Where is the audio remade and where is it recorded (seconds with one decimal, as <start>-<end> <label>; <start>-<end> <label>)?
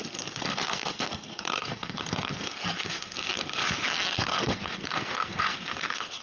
0.0-3.6 remade; 3.6-4.1 recorded; 4.1-6.2 remade